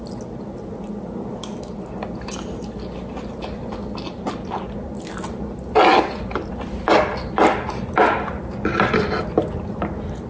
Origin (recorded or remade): recorded